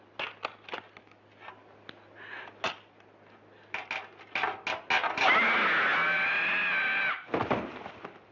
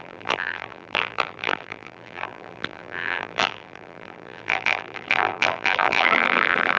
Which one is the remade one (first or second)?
second